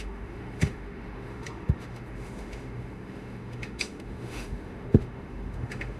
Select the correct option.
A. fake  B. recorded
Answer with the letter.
A